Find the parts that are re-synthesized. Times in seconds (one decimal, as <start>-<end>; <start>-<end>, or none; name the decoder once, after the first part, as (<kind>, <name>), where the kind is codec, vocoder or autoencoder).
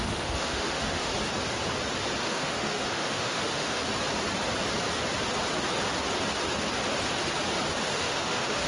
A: 0.0-1.1 (autoencoder, DAC-VAE); 2.2-3.8; 7.8-8.7